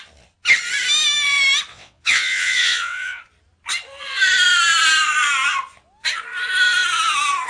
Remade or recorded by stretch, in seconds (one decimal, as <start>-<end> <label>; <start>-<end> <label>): 0.0-1.7 recorded; 1.7-3.2 remade; 3.2-7.5 recorded